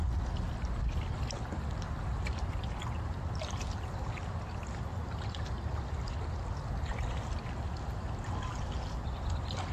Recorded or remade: recorded